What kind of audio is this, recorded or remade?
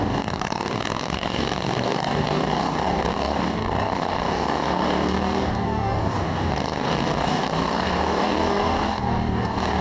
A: remade